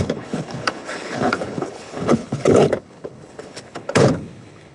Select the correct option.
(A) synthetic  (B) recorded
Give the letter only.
A